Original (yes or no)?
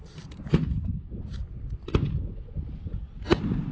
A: yes